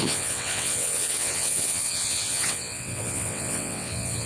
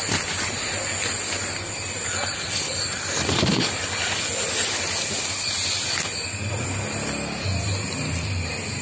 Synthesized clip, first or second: first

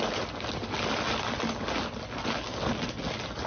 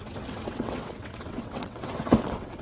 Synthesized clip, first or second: second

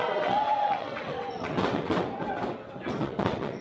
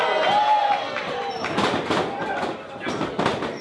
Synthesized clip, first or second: first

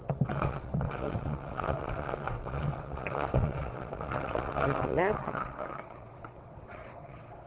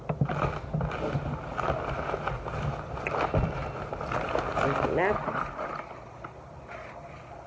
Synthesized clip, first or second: first